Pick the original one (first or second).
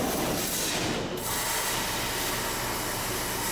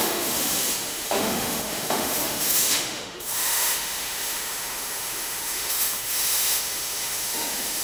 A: first